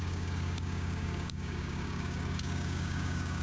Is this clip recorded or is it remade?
remade